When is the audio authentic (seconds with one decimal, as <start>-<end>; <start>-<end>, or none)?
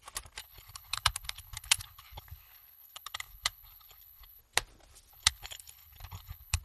0.0-0.4; 4.4-5.1